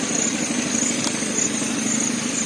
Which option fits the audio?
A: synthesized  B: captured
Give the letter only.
B